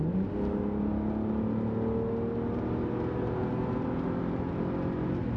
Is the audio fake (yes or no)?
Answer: no